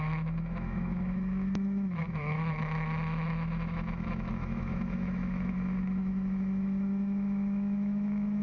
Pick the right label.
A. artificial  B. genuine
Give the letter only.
A